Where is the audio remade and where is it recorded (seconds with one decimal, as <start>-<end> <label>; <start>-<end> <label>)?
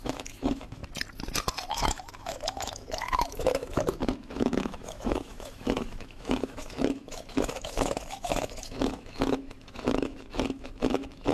0.0-0.8 remade; 0.8-1.7 recorded; 1.7-11.3 remade